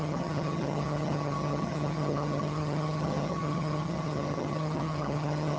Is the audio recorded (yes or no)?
no